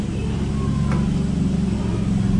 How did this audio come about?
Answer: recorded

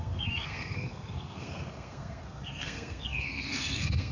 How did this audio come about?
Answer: remade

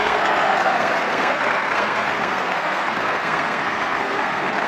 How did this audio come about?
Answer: remade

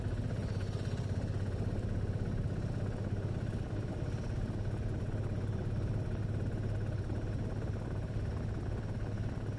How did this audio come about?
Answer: recorded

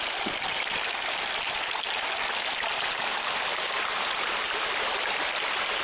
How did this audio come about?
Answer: recorded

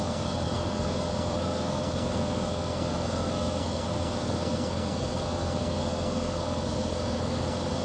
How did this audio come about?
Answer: remade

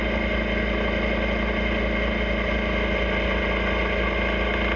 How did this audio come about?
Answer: recorded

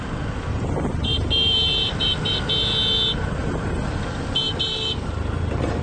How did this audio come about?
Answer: recorded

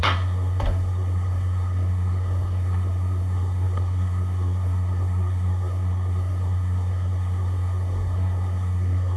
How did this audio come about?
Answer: remade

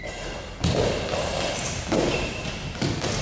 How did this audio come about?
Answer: recorded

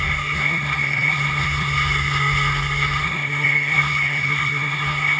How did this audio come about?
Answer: remade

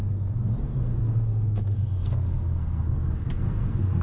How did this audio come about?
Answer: remade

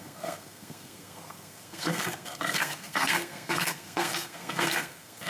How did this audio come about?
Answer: remade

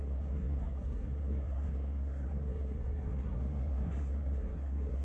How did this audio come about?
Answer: remade